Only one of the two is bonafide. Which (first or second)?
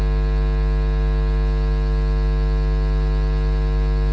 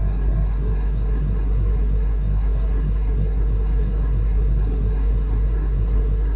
first